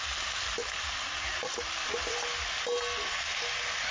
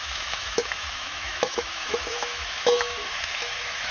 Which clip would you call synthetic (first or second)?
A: second